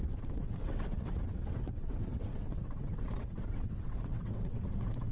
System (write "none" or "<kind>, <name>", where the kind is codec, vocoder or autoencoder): vocoder, WaveNeXt